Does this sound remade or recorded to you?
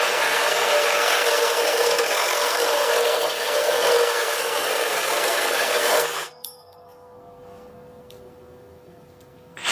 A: remade